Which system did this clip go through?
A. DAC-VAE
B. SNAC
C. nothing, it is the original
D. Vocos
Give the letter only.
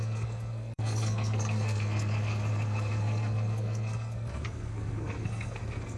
B